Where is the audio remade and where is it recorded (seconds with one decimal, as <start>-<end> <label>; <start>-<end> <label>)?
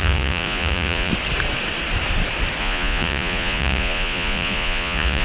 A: 0.0-1.1 remade; 1.1-2.6 recorded; 2.6-5.2 remade